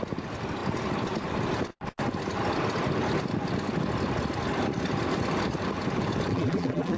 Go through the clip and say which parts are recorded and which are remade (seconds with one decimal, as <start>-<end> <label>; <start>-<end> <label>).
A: 0.0-6.3 recorded; 6.3-7.0 remade